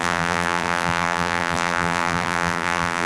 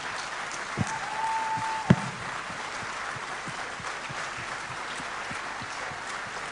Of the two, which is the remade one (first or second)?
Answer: first